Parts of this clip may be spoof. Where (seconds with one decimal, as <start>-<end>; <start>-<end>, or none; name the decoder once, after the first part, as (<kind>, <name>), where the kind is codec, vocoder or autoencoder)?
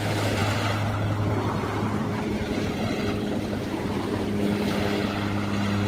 none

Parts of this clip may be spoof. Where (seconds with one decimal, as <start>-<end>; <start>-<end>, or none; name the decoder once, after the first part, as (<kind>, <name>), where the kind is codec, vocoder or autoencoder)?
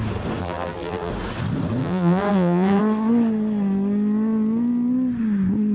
0.4-1.1 (vocoder, BigVGAN v2); 1.8-2.8